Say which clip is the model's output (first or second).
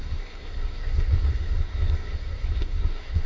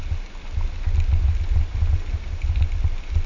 first